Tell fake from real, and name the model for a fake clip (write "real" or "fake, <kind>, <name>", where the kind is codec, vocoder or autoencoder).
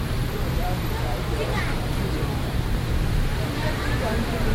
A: fake, vocoder, BigVGAN v2